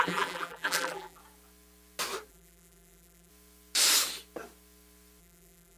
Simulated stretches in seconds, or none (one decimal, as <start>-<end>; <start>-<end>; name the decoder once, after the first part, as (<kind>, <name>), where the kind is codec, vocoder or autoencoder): 0.0-1.2 (vocoder, BigVGAN v2); 2.3-3.3; 5.2-5.8